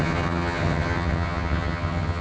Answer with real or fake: fake